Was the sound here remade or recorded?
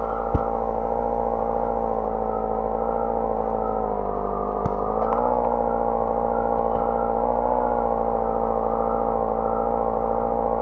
recorded